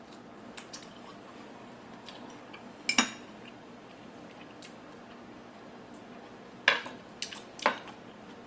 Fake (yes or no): no